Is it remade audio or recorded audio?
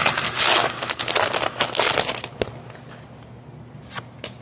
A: recorded